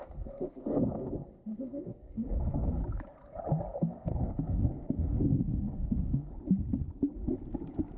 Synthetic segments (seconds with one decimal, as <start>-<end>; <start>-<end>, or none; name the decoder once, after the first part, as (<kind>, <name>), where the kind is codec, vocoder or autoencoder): 0.0-2.8 (codec, SNAC); 3.8-6.3